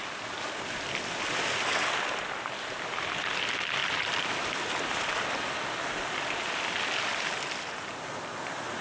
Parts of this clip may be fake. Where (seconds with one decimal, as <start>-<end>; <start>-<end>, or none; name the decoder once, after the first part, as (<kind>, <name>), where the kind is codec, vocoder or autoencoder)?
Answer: 3.8-4.3 (vocoder, BigVGAN v2)